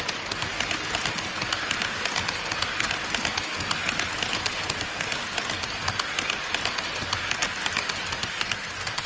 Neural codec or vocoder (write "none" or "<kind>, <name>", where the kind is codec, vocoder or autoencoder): none